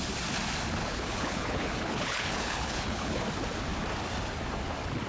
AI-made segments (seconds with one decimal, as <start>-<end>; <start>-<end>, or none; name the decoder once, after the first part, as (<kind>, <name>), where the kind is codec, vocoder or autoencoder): 0.8-3.2 (codec, HILCodec)